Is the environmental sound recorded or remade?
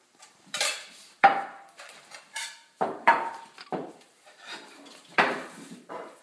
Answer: remade